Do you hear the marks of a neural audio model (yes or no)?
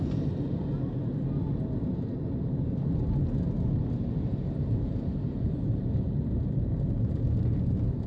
no